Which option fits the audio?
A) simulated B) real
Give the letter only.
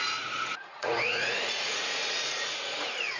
A